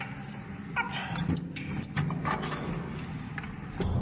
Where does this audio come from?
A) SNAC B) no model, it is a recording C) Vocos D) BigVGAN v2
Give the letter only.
B